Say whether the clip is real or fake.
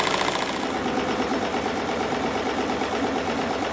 real